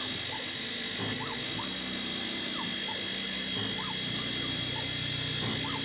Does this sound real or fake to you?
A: real